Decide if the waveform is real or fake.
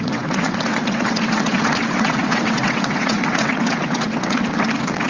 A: fake